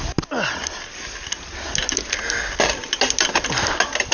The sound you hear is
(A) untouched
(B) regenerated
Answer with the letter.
A